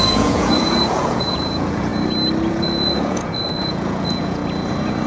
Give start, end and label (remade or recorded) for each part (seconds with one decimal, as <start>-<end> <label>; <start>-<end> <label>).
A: 0.0-1.9 remade; 1.9-2.5 recorded; 2.5-4.4 remade; 4.4-5.1 recorded